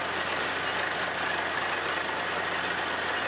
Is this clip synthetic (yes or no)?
no